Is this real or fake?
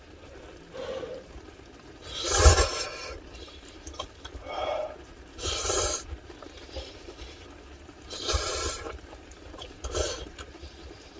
fake